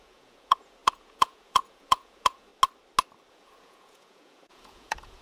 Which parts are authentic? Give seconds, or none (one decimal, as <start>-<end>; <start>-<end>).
2.5-3.3